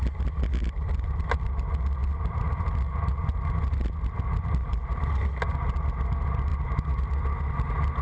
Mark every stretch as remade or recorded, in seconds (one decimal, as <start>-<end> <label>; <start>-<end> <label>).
0.0-8.0 recorded